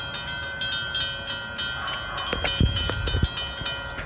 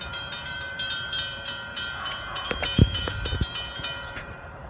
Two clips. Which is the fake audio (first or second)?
second